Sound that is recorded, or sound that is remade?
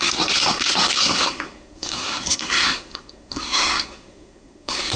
remade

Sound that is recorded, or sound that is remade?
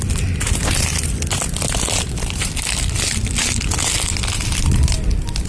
recorded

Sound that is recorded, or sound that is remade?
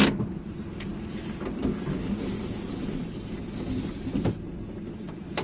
recorded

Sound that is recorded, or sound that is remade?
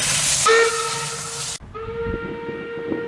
recorded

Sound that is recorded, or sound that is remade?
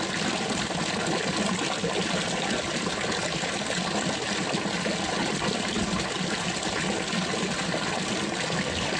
recorded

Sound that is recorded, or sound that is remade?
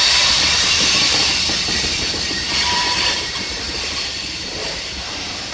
remade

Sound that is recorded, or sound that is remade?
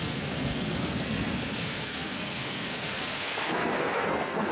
remade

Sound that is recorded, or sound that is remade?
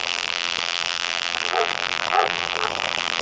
remade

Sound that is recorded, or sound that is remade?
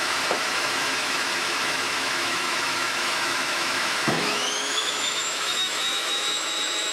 remade